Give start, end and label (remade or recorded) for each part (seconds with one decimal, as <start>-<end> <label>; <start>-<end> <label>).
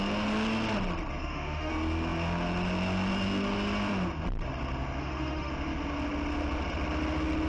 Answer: 0.0-1.2 recorded; 1.2-1.7 remade; 1.7-5.0 recorded; 5.0-5.5 remade; 5.5-7.5 recorded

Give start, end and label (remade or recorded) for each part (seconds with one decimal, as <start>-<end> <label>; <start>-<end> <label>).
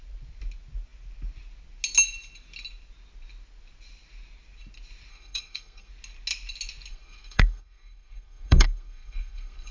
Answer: 0.0-5.1 recorded; 5.1-5.9 remade; 5.9-6.9 recorded; 6.9-9.7 remade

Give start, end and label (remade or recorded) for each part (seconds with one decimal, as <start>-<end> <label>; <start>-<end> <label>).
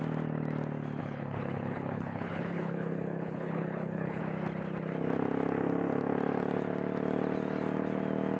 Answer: 0.0-1.0 recorded; 1.0-4.2 remade; 4.2-8.4 recorded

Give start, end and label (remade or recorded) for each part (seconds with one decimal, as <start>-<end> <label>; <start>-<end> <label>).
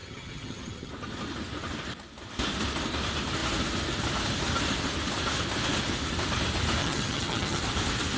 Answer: 0.0-0.9 remade; 0.9-6.8 recorded; 6.8-7.6 remade; 7.6-8.2 recorded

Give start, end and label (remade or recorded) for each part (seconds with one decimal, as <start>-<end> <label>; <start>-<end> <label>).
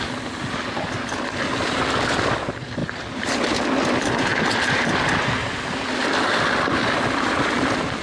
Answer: 0.0-8.0 recorded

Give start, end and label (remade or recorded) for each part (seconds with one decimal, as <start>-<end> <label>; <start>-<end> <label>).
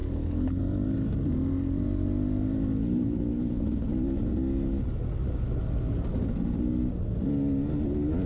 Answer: 0.0-0.6 remade; 0.6-2.8 recorded; 2.8-3.9 remade; 3.9-8.3 recorded